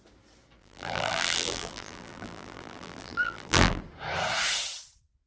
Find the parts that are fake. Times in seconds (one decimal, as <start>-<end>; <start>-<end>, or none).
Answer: 0.6-3.8

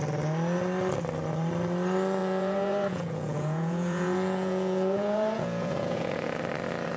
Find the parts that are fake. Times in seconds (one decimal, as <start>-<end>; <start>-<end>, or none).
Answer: 2.2-6.4

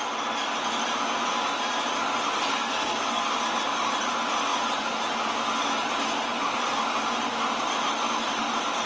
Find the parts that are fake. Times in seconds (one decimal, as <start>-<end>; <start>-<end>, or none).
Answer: 2.5-3.3